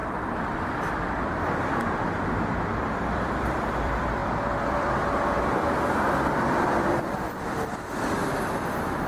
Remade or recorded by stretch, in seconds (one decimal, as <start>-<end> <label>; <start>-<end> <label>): 0.0-1.9 recorded; 1.9-8.2 remade; 8.2-9.1 recorded